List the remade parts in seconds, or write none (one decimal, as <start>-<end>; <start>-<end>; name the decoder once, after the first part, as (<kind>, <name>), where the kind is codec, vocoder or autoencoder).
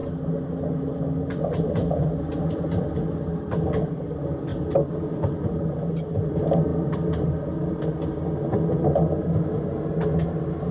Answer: none